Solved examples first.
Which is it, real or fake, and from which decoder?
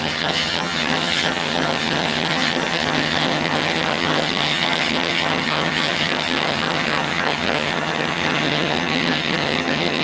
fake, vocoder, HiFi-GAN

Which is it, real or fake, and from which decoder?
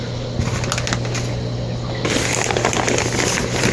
real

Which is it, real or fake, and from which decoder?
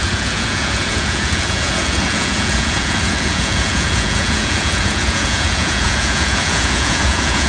fake, vocoder, Vocos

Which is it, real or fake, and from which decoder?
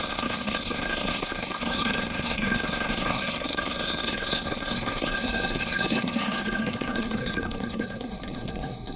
fake, codec, SNAC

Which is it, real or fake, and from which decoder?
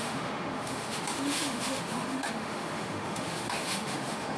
fake, autoencoder, DAC-VAE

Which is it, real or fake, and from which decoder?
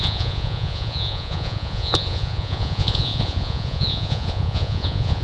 fake, vocoder, Vocos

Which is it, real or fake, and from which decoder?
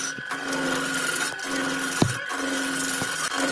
real